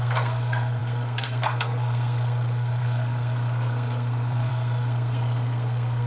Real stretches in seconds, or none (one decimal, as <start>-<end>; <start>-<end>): none